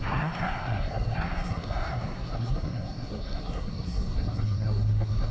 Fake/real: fake